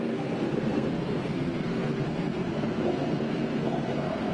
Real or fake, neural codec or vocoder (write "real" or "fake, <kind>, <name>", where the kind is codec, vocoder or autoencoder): fake, codec, SNAC